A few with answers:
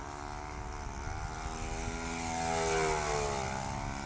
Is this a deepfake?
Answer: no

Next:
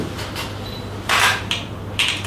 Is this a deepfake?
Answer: no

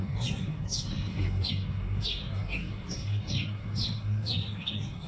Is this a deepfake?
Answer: yes